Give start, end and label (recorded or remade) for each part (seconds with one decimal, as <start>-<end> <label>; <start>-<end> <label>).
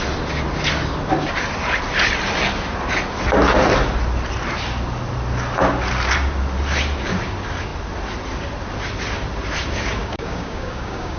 0.0-10.0 recorded; 10.0-11.2 remade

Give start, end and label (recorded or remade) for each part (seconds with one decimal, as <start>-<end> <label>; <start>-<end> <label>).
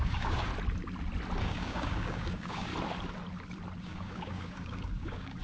0.0-0.5 remade; 0.5-1.4 recorded; 1.4-2.7 remade; 2.7-3.8 recorded; 3.8-5.4 remade